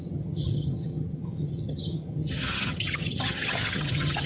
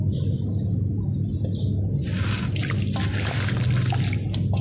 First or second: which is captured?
second